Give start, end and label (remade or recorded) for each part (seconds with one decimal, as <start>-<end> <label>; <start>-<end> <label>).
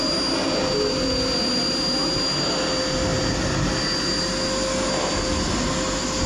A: 0.0-6.3 recorded